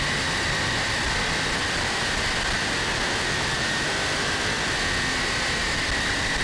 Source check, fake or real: real